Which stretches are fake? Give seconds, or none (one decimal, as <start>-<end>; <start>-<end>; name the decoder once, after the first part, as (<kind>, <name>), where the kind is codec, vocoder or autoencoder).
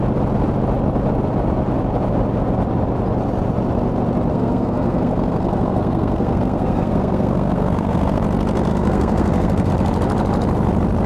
4.3-8.2 (codec, SNAC); 8.7-9.7